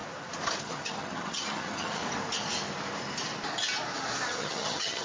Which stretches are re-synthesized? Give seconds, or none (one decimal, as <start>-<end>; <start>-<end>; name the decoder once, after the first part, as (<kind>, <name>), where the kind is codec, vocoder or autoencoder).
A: 0.6-2.0 (vocoder, HiFi-GAN); 4.3-5.0